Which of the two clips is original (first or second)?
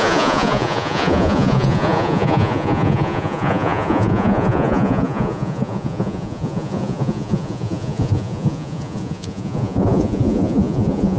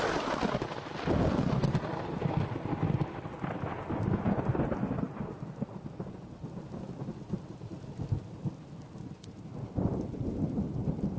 second